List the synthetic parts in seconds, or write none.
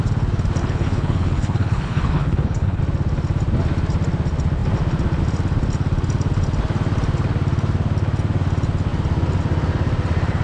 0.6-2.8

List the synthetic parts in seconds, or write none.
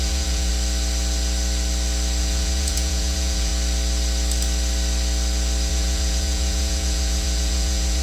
0.0-0.5; 2.2-3.5; 5.7-8.0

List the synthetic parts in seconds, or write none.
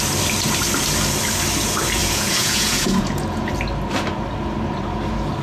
2.0-3.5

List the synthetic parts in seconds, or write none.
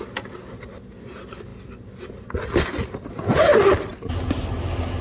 none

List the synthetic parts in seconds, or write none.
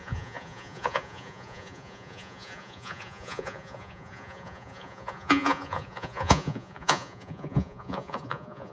0.0-8.7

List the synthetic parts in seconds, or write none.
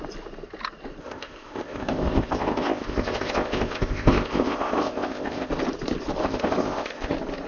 1.0-5.5; 6.2-7.1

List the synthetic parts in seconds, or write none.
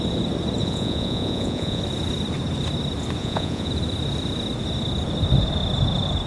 0.6-1.8; 3.2-3.7